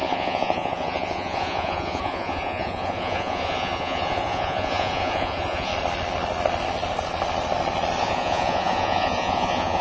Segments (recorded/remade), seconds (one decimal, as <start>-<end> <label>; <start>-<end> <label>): 0.0-5.7 remade; 5.7-8.0 recorded; 8.0-9.8 remade